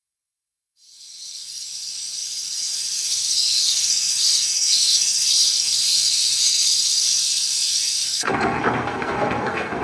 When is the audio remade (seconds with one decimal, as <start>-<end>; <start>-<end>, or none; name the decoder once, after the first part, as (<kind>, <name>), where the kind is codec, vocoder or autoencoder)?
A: 0.0-9.8 (codec, SNAC)